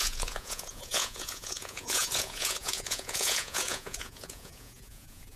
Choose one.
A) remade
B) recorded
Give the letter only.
A